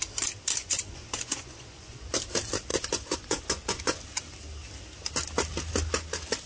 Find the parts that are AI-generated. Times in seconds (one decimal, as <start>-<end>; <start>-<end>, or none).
0.6-2.1; 2.7-4.0